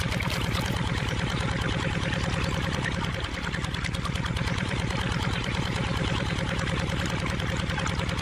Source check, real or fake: fake